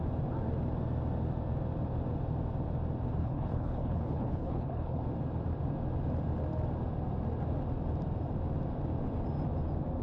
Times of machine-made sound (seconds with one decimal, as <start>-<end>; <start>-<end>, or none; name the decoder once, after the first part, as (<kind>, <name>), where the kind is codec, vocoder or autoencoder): 3.2-5.0 (codec, HILCodec)